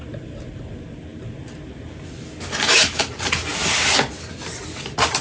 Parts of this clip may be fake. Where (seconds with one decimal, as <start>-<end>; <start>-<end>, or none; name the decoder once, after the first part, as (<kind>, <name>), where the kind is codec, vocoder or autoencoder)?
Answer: none